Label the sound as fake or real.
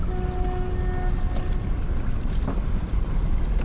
real